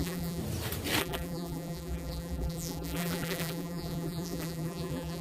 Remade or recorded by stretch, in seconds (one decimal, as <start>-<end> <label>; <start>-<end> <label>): 0.0-0.4 remade; 0.4-1.0 recorded; 1.0-5.2 remade